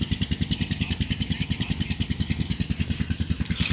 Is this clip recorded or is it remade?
recorded